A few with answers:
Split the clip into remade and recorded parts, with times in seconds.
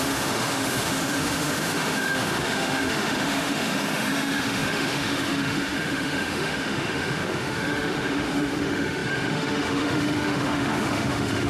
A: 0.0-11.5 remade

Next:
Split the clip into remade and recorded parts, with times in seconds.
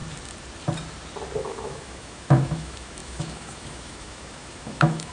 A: 0.0-1.4 recorded; 1.4-5.1 remade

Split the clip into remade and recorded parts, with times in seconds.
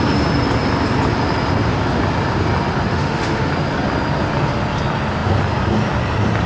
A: 0.0-2.9 recorded; 2.9-3.5 remade; 3.5-6.5 recorded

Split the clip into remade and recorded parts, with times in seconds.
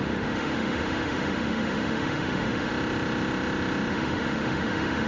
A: 0.0-2.7 remade; 2.7-3.9 recorded; 3.9-5.1 remade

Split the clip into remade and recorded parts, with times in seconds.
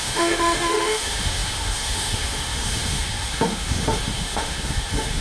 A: 0.0-5.2 remade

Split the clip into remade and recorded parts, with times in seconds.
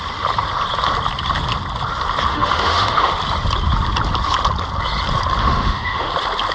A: 0.0-2.3 recorded; 2.3-3.1 remade; 3.1-5.4 recorded; 5.4-6.1 remade; 6.1-6.5 recorded